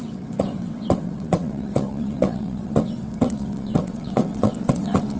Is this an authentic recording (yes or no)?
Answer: no